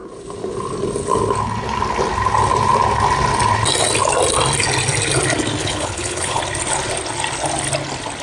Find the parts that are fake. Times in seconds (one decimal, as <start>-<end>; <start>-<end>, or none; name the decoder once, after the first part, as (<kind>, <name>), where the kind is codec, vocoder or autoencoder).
5.6-6.4 (codec, HILCodec)